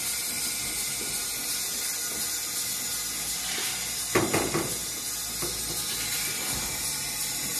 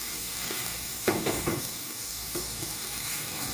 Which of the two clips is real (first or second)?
first